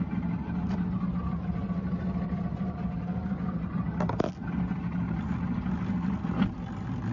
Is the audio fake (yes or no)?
no